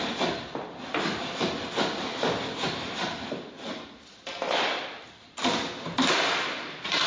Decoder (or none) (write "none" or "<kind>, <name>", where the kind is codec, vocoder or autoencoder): none